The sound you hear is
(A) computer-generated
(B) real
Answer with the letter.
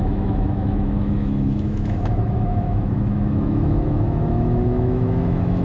A